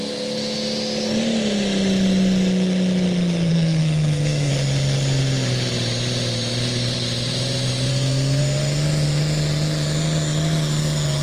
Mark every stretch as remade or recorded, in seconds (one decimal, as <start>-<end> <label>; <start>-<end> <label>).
0.0-3.5 recorded; 3.5-4.5 remade; 4.5-7.9 recorded; 7.9-8.4 remade; 8.4-11.2 recorded

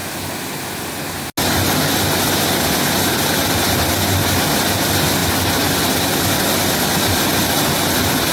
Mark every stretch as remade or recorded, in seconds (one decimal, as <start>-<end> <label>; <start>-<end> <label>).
0.0-8.3 recorded

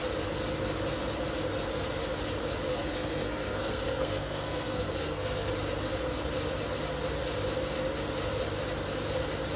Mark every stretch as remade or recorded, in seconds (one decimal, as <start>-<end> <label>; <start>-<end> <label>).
0.0-2.7 recorded; 2.7-5.5 remade; 5.5-9.6 recorded

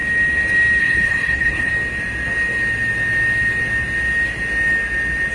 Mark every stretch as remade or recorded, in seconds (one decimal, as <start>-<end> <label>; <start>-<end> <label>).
0.0-0.8 recorded; 0.8-1.7 remade; 1.7-5.3 recorded

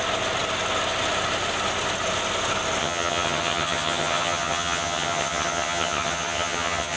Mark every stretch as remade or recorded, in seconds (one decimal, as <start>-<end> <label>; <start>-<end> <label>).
0.0-2.8 recorded; 2.8-7.0 remade